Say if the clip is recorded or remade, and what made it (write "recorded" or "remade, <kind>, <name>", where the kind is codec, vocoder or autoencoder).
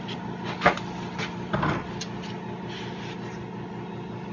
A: recorded